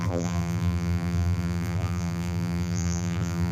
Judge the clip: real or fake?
fake